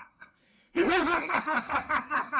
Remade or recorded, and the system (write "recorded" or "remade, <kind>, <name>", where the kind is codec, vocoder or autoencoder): remade, codec, SNAC